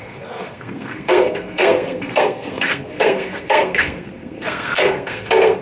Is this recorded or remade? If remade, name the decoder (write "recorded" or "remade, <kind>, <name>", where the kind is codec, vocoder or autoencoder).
remade, codec, SNAC